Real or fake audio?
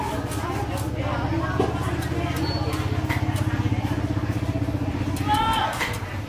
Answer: real